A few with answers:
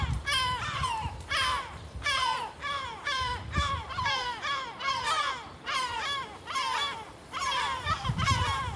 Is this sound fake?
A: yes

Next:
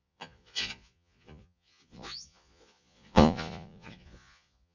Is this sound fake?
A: yes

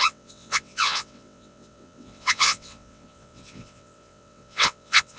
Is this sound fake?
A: yes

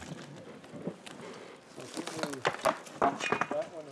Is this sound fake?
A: no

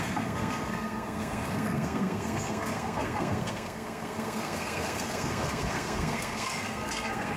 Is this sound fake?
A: yes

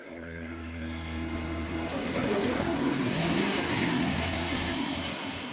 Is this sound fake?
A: yes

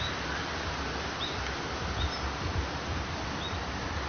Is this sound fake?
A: no